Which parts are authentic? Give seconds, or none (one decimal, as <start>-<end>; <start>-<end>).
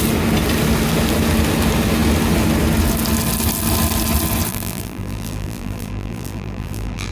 0.0-4.5